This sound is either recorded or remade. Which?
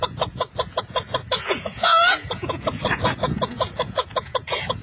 remade